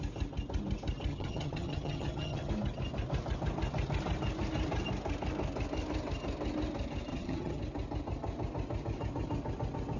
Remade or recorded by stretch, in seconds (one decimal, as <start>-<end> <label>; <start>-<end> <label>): 0.0-1.1 recorded; 1.1-2.5 remade; 2.5-7.1 recorded; 7.1-7.6 remade; 7.6-10.0 recorded